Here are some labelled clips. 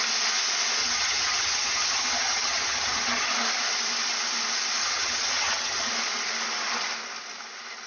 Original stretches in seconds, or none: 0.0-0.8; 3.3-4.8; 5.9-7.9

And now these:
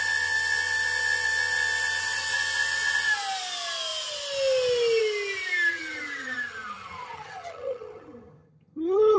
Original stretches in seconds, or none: 0.0-5.7

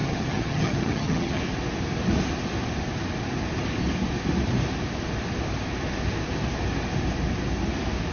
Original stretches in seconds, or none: 1.4-8.1